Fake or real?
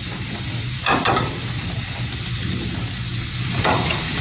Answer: fake